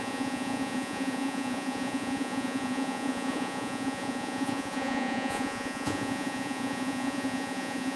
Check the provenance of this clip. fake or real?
fake